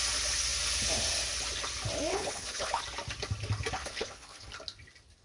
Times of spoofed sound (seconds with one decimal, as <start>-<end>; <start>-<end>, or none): 2.1-2.8; 3.8-4.5